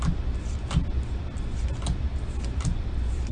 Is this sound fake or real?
real